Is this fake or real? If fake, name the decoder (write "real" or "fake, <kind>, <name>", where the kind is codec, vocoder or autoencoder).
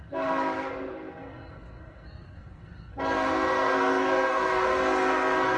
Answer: fake, codec, SNAC